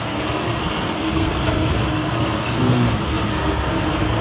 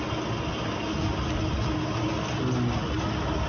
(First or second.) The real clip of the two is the second